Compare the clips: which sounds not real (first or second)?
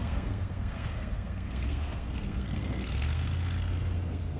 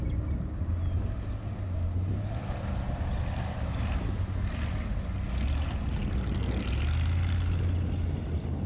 first